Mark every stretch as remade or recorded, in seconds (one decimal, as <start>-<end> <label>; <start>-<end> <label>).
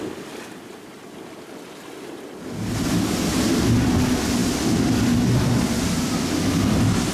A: 0.0-7.1 recorded